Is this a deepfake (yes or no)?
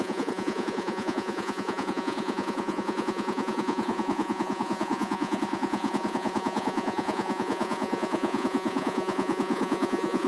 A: yes